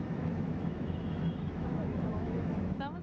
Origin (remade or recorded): remade